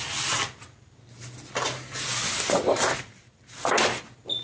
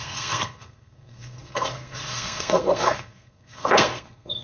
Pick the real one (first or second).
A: first